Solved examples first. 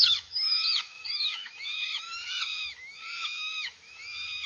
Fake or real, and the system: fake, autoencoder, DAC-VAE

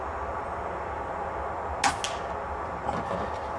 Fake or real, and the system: real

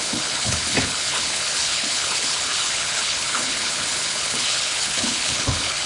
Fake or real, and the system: fake, codec, HILCodec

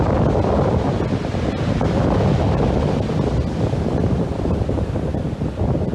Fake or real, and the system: real